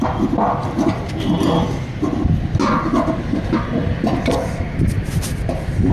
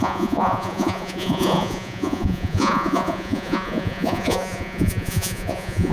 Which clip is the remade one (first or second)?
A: second